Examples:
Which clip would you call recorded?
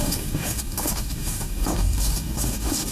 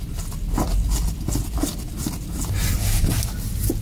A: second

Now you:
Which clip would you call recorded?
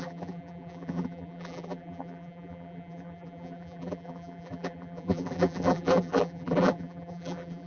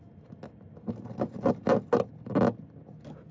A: second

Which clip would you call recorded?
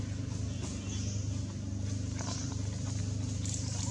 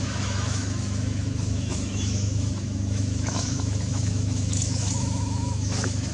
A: first